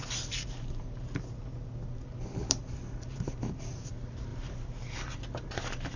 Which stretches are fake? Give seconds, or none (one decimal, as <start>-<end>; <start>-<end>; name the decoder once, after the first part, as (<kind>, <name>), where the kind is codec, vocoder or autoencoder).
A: 2.4-3.3 (vocoder, BigVGAN v2); 4.3-5.1